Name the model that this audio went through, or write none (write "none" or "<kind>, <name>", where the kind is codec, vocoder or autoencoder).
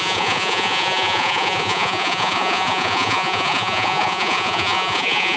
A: vocoder, Vocos